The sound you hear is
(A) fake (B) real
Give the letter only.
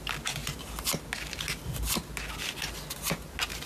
B